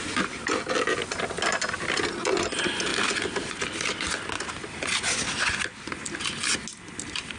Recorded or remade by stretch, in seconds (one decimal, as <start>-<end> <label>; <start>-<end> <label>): 0.0-7.4 recorded